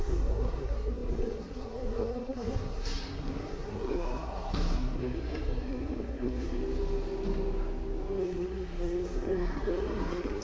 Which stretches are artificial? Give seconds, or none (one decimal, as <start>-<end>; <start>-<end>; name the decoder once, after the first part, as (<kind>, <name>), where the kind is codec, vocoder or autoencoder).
0.0-6.6 (codec, SNAC); 8.2-10.4